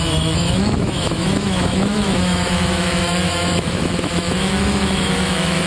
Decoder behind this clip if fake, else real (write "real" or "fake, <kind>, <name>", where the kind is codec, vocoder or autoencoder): fake, autoencoder, DAC-VAE